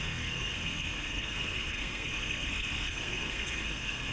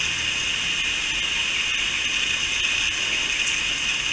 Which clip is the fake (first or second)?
first